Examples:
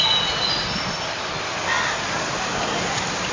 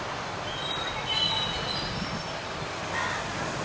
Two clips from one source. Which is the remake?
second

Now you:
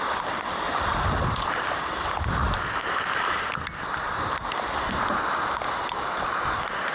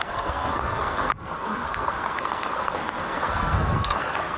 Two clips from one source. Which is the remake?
second